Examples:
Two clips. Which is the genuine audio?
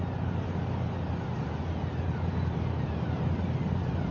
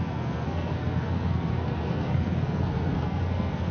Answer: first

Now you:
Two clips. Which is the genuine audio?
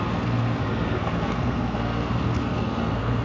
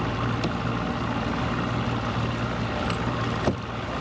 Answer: second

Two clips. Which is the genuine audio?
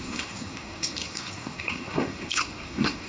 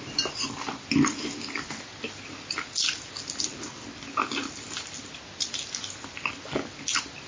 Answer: second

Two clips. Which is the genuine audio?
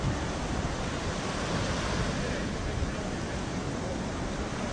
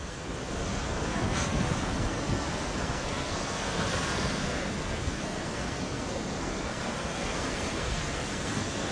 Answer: first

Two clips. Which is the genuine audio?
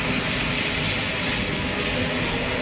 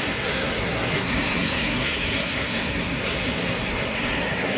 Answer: first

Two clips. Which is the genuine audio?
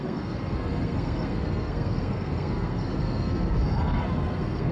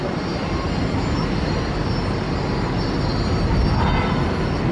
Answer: second